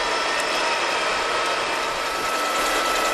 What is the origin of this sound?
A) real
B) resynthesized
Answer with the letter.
A